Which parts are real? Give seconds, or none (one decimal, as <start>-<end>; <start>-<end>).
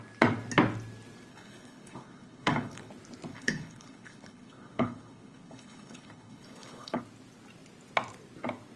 0.0-1.3; 2.9-3.3; 7.0-8.8